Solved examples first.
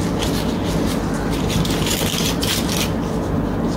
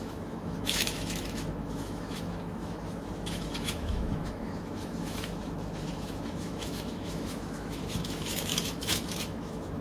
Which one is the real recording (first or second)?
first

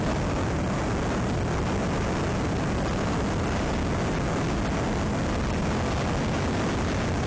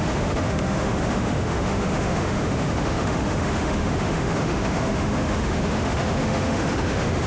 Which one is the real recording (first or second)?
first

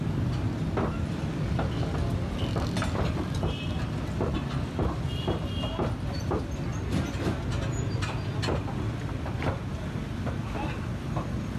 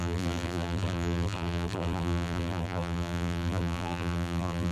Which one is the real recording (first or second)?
first